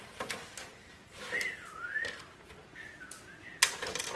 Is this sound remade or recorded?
recorded